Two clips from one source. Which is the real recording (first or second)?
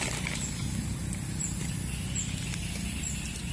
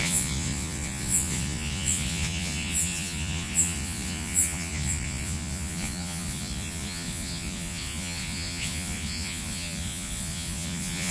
first